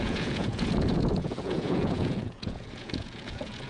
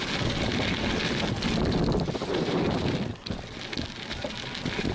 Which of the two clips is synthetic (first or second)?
first